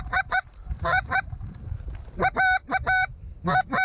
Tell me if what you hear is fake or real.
real